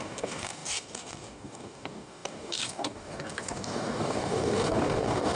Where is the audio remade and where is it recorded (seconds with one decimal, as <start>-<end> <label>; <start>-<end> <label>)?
0.0-5.4 remade